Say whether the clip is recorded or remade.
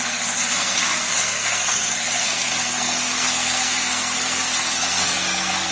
remade